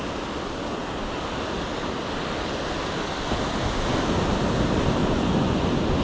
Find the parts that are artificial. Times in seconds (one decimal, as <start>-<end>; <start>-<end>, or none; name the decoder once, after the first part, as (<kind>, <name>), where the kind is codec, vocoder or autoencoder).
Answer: 5.0-5.6 (vocoder, Vocos)